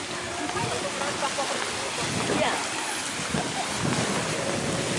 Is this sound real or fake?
real